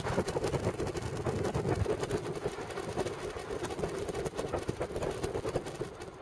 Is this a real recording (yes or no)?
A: yes